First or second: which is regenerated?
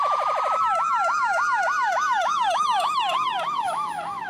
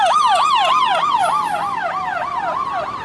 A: first